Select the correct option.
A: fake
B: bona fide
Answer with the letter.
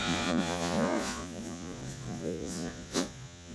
A